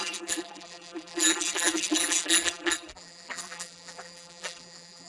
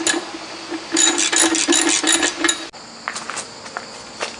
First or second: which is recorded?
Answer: second